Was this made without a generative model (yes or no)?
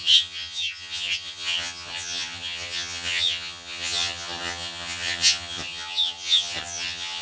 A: no